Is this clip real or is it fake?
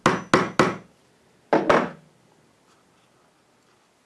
real